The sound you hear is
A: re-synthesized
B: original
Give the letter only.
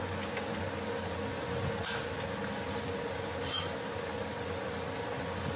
B